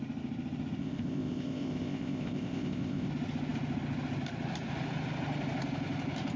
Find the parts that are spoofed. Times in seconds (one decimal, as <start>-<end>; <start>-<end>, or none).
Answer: 0.8-3.1